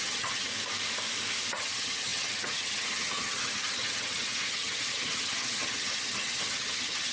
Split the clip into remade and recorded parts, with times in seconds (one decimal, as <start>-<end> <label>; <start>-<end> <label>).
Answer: 0.0-0.5 remade; 0.5-1.5 recorded; 1.5-7.1 remade